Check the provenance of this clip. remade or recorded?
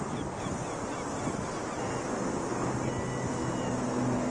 recorded